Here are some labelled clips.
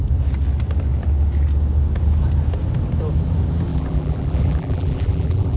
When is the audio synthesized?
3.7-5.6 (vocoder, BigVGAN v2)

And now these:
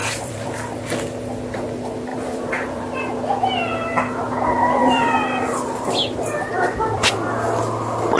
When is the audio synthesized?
0.0-0.5 (vocoder, BigVGAN v2); 2.1-3.1; 4.8-5.6

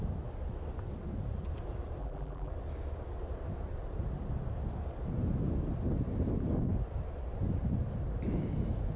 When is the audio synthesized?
2.0-2.5 (vocoder, BigVGAN v2)

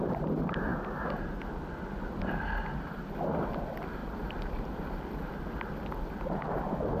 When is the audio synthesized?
4.0-5.0 (vocoder, BigVGAN v2)

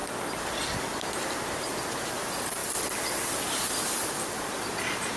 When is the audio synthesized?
1.1-5.2 (vocoder, BigVGAN v2)